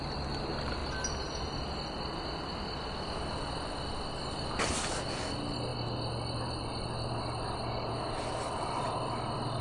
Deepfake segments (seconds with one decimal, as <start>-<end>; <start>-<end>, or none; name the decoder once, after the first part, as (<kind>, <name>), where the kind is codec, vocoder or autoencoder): none